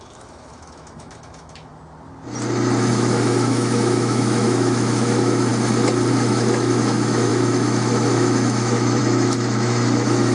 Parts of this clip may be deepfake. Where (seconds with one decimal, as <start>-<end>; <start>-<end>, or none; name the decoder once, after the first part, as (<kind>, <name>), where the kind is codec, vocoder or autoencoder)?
0.0-1.7 (autoencoder, DAC-VAE); 2.9-5.5; 6.1-10.3